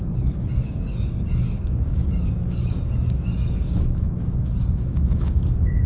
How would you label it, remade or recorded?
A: remade